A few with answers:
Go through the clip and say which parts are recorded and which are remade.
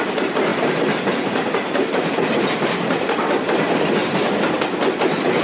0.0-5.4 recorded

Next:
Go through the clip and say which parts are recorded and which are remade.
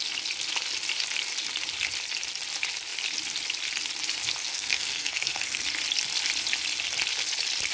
0.0-4.5 recorded; 4.5-5.6 remade; 5.6-7.7 recorded